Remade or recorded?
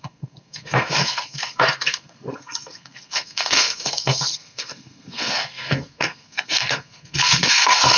remade